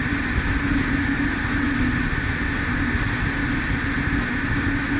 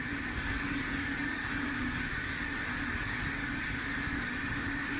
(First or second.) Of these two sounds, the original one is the first